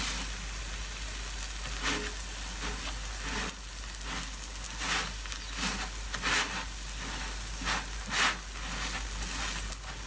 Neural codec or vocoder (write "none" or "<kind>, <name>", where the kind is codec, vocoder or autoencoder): none